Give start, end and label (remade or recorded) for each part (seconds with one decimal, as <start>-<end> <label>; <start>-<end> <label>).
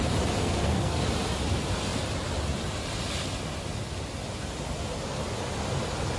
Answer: 0.0-0.4 recorded; 0.4-1.0 remade; 1.0-6.2 recorded